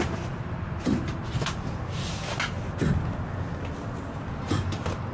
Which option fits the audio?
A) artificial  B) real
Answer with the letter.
B